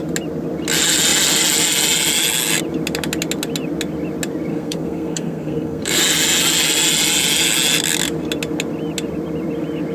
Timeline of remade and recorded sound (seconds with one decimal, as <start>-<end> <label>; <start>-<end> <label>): 0.0-4.5 recorded; 4.5-6.0 remade; 6.0-9.9 recorded